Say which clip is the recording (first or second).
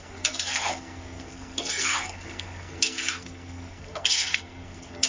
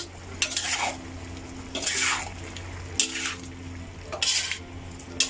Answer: second